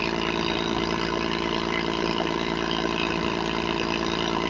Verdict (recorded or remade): remade